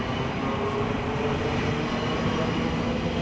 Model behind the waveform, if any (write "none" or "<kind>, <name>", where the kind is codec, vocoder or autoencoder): none